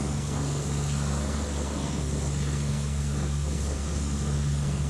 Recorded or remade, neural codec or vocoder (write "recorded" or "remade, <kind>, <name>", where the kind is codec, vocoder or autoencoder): remade, codec, SNAC